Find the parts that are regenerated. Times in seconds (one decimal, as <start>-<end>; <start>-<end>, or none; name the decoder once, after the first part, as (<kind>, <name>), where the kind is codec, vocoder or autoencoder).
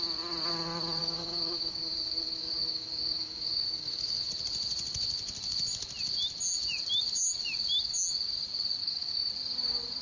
1.0-4.3 (autoencoder, DAC-VAE); 8.8-9.3